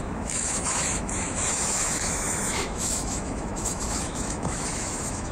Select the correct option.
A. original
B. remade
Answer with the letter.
B